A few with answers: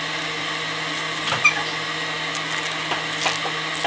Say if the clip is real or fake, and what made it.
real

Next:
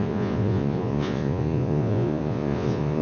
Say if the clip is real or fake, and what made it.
fake, vocoder, Vocos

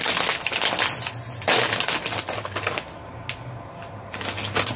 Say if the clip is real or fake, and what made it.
real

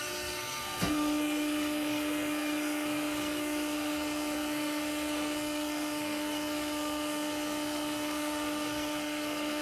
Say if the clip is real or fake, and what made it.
fake, codec, SNAC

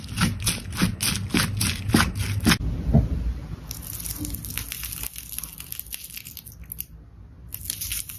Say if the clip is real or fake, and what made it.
real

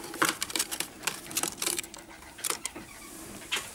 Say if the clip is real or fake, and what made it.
fake, vocoder, BigVGAN v2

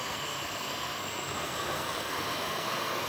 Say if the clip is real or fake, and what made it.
fake, codec, SNAC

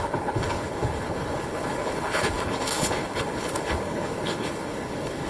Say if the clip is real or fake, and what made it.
fake, codec, HILCodec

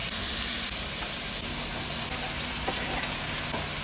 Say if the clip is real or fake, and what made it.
real